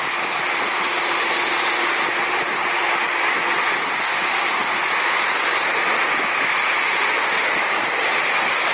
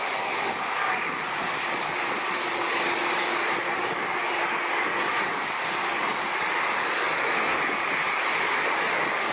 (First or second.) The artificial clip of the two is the second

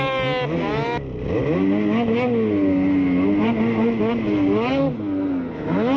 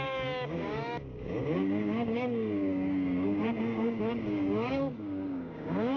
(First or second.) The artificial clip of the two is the second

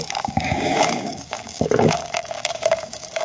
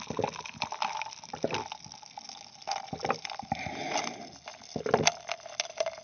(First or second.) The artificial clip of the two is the first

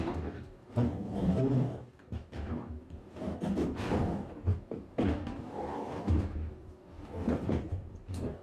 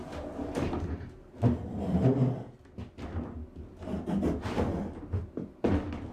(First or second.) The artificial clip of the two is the first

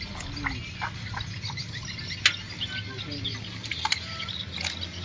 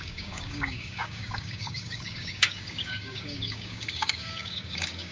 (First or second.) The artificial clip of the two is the second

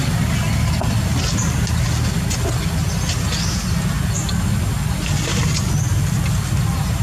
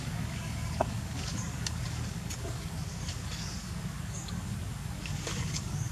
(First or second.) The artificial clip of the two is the second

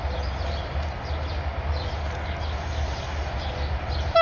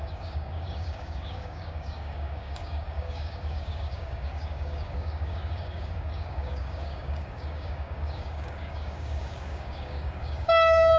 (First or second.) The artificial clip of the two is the second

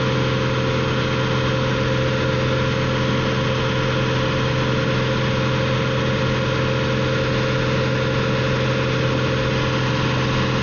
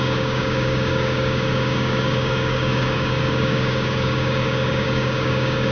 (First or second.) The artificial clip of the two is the second